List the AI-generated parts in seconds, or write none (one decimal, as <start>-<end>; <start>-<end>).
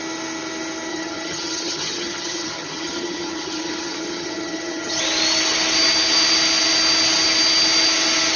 0.9-5.0